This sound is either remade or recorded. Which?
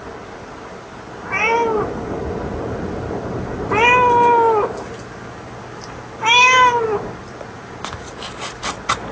recorded